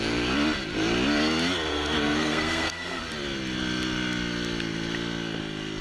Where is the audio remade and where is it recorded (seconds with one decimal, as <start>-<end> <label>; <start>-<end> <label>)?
0.0-1.7 recorded; 1.7-3.0 remade; 3.0-5.8 recorded